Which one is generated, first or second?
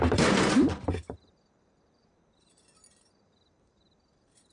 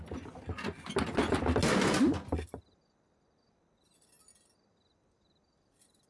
first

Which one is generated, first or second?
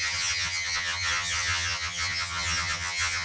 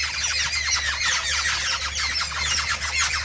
first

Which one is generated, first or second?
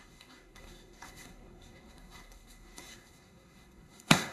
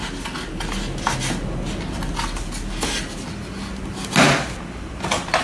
first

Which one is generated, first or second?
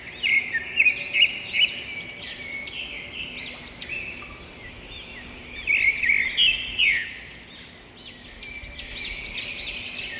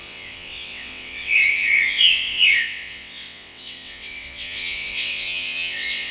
second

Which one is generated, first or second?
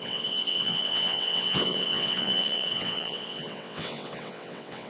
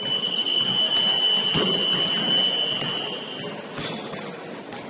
first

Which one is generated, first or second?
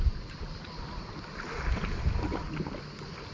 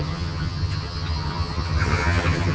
second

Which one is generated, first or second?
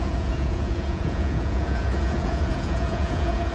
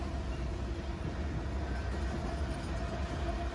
first